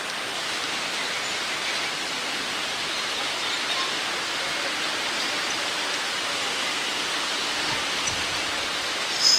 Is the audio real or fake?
real